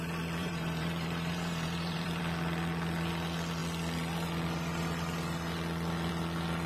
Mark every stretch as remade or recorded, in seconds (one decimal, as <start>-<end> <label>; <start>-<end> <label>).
0.0-0.4 recorded; 0.4-2.2 remade; 2.2-6.7 recorded